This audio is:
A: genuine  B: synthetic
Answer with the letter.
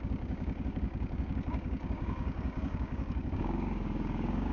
B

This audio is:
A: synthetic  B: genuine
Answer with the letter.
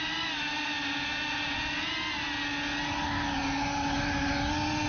B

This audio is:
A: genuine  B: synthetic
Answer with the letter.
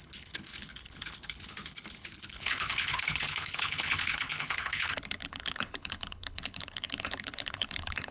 B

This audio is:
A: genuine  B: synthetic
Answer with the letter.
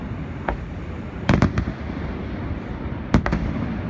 B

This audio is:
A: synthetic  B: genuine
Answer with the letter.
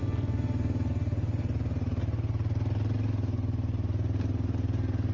B